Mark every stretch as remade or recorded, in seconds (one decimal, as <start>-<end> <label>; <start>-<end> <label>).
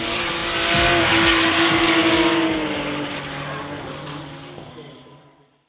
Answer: 0.0-0.4 remade; 0.4-1.0 recorded; 1.0-2.0 remade; 2.0-4.7 recorded; 4.7-5.7 remade